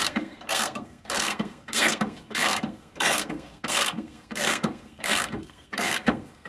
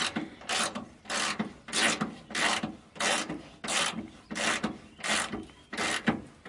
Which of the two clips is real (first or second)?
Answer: second